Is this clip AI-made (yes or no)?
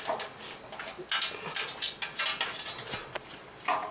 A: no